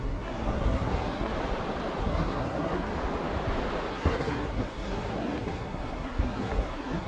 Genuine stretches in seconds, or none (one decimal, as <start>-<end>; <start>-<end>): 1.3-2.0; 2.9-3.9